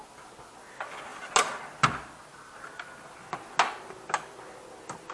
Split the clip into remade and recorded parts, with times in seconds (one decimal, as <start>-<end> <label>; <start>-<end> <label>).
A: 0.0-5.1 recorded